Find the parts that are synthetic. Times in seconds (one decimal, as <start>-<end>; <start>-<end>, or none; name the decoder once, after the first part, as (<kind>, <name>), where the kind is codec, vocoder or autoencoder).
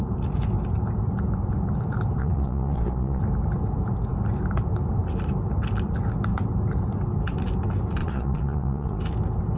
2.2-3.2 (vocoder, Vocos); 8.0-9.0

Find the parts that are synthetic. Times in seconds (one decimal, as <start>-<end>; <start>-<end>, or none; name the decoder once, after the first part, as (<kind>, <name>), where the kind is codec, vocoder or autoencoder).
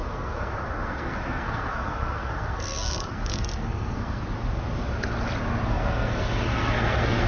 0.0-4.2 (codec, SNAC); 5.7-7.3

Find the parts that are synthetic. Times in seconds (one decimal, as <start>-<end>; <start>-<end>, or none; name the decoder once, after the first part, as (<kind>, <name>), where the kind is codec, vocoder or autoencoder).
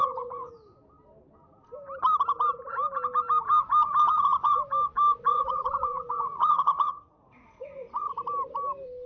0.0-0.5 (vocoder, WaveNeXt); 5.3-8.1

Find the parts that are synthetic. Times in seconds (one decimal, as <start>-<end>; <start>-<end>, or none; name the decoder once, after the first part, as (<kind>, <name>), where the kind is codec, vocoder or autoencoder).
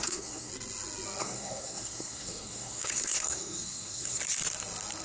0.0-0.5 (codec, SNAC); 1.2-4.2